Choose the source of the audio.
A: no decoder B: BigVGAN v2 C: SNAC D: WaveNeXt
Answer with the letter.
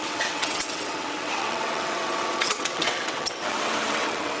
D